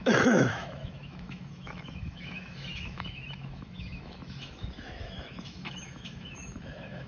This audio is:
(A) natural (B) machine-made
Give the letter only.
B